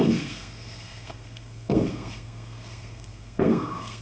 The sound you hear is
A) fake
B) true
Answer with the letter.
A